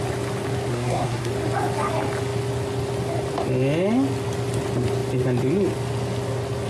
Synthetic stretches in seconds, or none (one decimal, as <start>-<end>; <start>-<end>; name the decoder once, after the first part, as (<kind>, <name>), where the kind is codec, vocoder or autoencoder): 0.7-1.3 (codec, SNAC)